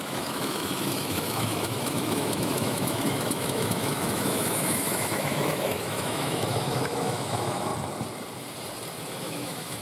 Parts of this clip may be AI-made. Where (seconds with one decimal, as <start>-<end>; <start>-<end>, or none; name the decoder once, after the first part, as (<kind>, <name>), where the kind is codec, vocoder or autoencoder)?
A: 0.0-7.7 (autoencoder, DAC-VAE); 9.2-9.8